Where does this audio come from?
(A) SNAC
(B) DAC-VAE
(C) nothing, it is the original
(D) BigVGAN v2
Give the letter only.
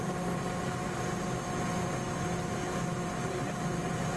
C